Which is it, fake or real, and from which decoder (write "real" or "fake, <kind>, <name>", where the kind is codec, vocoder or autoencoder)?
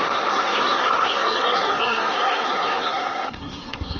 fake, codec, SNAC